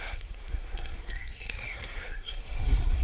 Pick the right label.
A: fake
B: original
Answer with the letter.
A